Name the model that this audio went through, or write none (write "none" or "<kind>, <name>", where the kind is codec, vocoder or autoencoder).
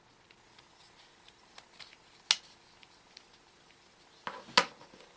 none